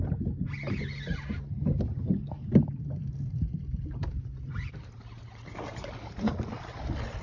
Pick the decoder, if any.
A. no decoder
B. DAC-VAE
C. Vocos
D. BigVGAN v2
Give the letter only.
A